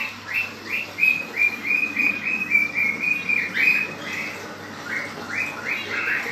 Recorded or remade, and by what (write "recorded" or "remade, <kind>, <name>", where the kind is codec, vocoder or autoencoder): recorded